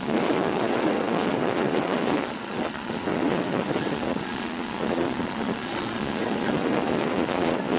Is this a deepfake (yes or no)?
yes